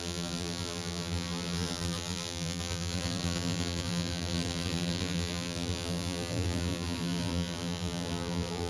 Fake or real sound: fake